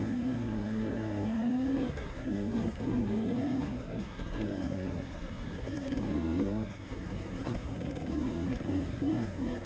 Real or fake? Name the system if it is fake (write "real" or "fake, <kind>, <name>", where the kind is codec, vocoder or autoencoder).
fake, codec, SNAC